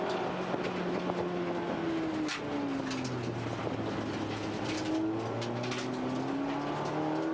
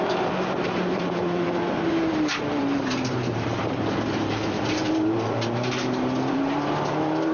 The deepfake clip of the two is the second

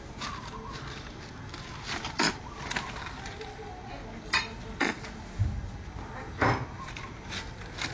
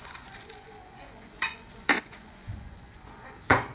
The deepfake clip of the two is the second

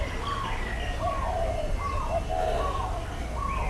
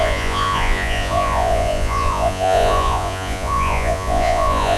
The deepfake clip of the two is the second